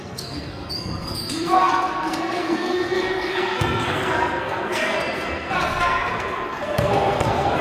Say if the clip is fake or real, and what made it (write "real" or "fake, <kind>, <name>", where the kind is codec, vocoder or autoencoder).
fake, codec, SNAC